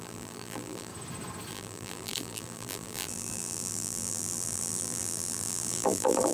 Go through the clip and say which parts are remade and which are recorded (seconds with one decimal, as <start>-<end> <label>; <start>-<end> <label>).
0.0-0.9 remade; 0.9-1.5 recorded; 1.5-6.3 remade

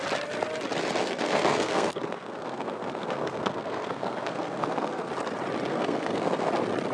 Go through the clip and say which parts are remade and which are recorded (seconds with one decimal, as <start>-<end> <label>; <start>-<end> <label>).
0.0-1.0 recorded; 1.0-5.1 remade; 5.1-5.7 recorded; 5.7-6.5 remade; 6.5-6.9 recorded